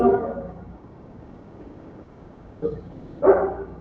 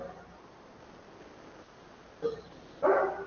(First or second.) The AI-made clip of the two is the first